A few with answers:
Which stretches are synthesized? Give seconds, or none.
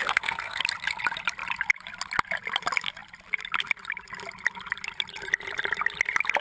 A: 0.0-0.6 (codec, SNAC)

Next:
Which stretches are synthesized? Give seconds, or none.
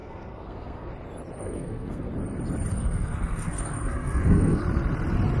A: 0.0-0.9 (codec, SNAC); 1.4-2.1; 2.7-4.6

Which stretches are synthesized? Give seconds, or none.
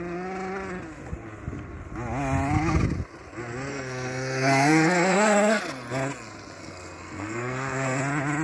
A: 3.7-5.6 (codec, SNAC); 6.6-8.0